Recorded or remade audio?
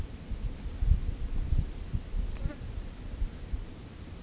remade